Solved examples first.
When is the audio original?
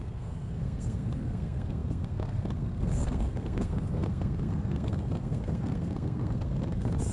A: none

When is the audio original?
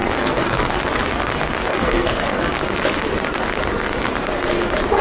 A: 0.8-1.7; 2.4-5.0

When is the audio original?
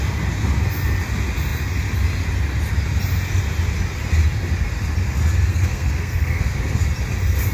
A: 0.0-5.5; 6.6-7.5